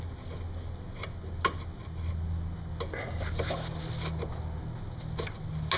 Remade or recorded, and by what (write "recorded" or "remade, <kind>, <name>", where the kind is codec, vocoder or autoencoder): recorded